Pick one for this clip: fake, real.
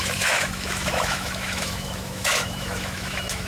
fake